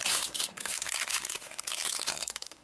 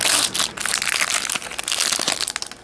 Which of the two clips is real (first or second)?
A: second